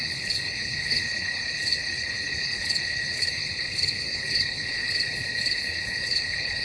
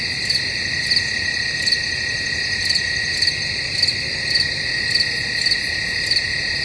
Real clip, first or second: second